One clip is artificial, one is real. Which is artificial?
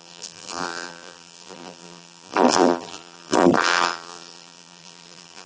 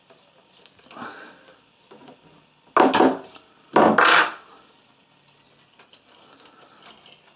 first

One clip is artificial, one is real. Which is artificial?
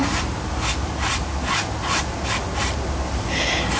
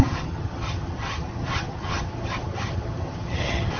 second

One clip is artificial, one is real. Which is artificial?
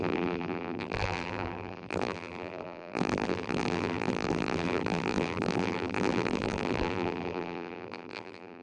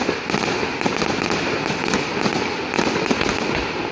first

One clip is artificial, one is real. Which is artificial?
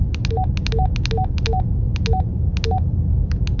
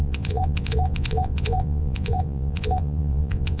second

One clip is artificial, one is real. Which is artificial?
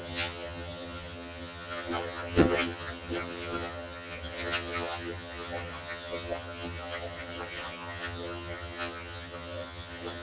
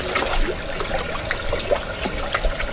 first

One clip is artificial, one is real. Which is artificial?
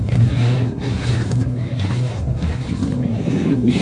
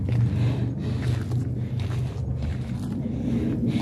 first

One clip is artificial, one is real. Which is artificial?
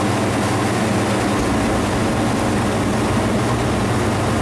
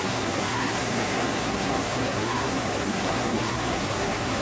second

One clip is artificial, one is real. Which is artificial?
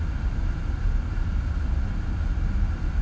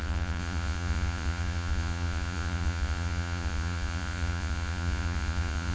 second